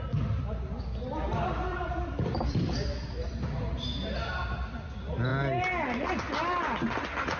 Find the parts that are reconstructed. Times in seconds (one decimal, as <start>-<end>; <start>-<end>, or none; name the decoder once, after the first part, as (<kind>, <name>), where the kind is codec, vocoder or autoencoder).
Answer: 1.7-3.4 (vocoder, BigVGAN v2)

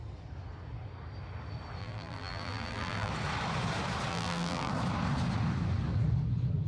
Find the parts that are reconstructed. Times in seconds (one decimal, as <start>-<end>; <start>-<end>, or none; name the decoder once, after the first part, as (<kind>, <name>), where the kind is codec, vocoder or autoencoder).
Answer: 1.8-3.1 (vocoder, BigVGAN v2); 4.1-4.7

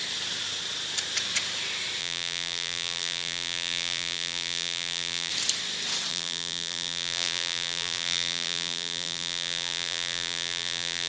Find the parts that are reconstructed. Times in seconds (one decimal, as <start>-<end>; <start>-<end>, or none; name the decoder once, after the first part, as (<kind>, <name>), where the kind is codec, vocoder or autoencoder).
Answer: 2.0-5.3 (vocoder, BigVGAN v2); 6.1-11.1

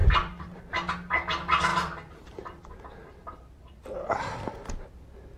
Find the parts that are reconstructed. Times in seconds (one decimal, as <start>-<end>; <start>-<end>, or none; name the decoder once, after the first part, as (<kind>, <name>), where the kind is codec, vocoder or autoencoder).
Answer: 0.0-0.6 (vocoder, BigVGAN v2)

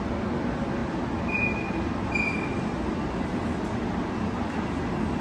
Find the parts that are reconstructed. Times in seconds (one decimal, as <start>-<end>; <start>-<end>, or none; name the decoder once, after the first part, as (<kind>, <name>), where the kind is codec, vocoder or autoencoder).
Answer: none

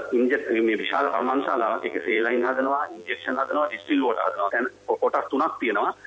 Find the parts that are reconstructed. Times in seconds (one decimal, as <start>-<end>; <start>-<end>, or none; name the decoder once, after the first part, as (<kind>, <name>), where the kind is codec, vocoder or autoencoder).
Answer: 0.8-4.5 (vocoder, BigVGAN v2)